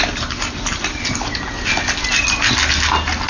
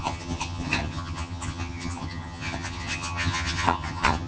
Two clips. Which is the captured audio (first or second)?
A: first